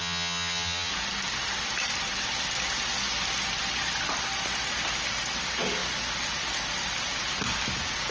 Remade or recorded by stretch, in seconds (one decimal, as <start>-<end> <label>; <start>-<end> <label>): 0.0-0.9 remade; 0.9-8.1 recorded